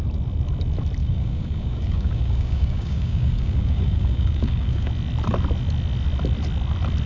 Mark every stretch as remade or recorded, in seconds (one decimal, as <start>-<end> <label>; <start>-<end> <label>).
0.0-1.0 recorded; 1.0-4.9 remade; 4.9-7.1 recorded